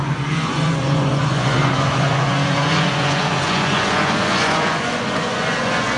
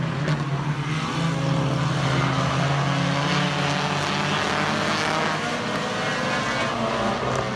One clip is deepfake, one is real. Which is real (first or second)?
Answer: second